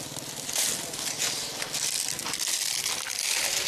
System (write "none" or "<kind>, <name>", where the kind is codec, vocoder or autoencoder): none